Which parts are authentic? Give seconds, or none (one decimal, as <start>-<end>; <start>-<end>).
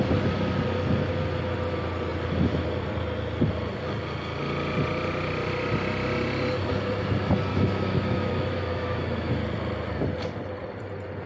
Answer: 0.0-7.5; 9.4-11.3